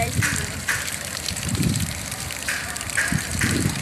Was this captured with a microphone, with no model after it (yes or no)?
no